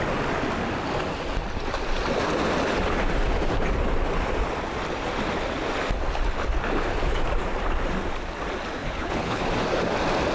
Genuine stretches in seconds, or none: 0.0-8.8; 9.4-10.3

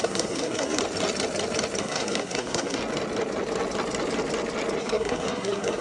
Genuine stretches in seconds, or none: 0.8-1.8; 2.8-4.8

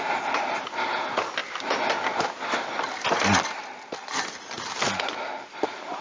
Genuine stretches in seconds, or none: 0.0-6.0

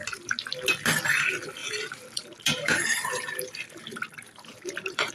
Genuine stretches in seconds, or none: 0.0-1.6